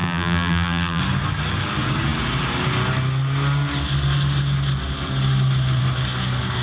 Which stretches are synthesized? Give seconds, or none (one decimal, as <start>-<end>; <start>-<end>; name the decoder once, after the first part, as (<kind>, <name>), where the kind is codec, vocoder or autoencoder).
0.0-1.0 (vocoder, BigVGAN v2)